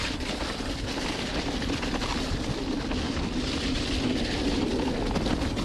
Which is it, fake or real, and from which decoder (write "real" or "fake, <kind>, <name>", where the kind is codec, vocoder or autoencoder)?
real